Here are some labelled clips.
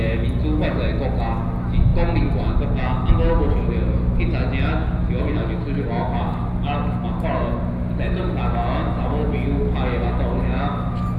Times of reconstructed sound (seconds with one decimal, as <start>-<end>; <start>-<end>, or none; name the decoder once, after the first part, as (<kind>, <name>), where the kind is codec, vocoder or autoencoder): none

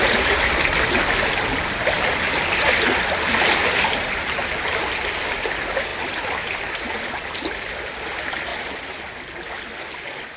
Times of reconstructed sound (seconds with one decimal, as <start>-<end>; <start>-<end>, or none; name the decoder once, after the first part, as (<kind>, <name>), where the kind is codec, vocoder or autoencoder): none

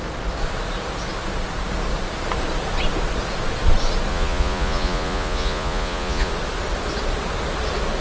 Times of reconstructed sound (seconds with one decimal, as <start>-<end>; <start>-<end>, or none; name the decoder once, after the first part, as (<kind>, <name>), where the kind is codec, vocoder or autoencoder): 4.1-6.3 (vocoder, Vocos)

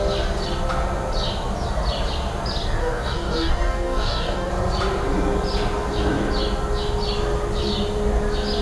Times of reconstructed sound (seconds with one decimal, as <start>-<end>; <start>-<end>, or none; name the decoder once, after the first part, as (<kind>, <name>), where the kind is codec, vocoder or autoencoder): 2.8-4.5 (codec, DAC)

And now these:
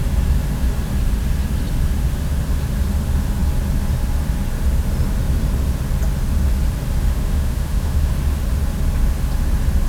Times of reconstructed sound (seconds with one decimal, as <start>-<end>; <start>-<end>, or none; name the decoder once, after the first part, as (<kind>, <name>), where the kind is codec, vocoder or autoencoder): 7.1-8.1 (autoencoder, DAC-VAE)

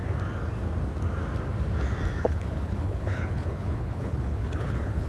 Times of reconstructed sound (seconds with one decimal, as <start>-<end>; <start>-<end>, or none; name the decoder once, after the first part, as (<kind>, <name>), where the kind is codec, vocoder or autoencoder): 2.2-5.1 (codec, HILCodec)